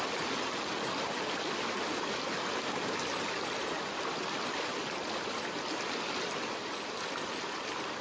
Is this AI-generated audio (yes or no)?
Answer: no